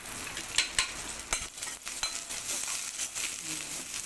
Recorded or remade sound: recorded